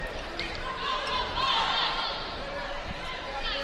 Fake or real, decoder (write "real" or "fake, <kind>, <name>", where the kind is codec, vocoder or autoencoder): fake, vocoder, BigVGAN v2